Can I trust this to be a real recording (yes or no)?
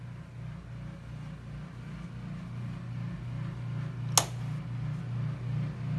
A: yes